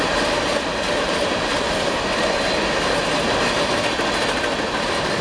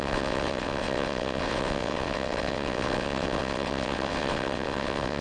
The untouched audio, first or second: first